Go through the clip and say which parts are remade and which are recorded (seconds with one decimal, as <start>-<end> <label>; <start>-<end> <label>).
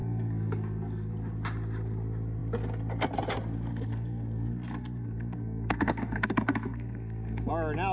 0.0-1.1 remade; 1.1-3.7 recorded; 3.7-7.5 remade; 7.5-7.9 recorded